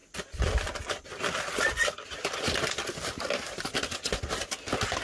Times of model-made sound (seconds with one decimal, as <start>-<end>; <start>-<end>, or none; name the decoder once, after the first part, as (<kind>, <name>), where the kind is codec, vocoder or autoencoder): none